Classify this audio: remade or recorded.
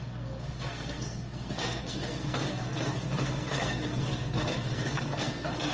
remade